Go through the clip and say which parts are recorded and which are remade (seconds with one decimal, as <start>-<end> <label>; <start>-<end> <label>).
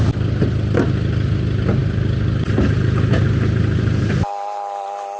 0.0-5.2 recorded